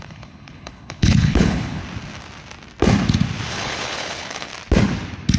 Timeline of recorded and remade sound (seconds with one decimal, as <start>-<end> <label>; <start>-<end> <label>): 0.0-1.8 remade; 1.8-3.5 recorded; 3.5-4.5 remade; 4.5-5.4 recorded